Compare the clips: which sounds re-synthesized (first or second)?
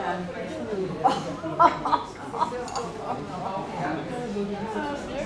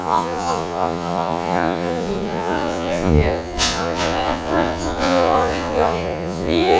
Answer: second